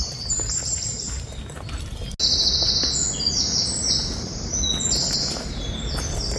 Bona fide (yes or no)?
yes